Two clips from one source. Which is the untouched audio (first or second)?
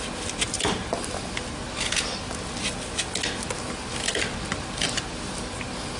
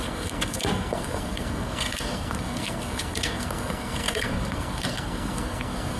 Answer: first